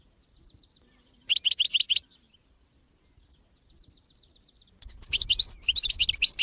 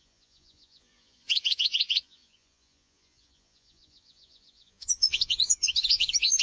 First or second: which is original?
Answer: first